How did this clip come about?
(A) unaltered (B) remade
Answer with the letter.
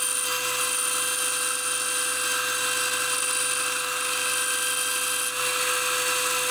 A